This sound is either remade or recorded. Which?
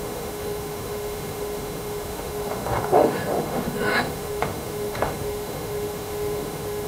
remade